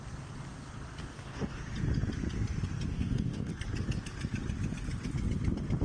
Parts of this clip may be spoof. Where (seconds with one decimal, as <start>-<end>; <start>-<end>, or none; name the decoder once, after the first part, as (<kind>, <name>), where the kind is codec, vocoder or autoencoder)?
1.0-1.6 (codec, DAC); 2.9-3.5